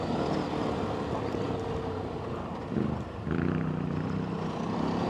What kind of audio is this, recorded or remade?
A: remade